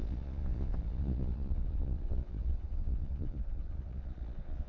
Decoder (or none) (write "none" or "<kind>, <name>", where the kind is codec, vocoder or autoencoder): vocoder, Vocos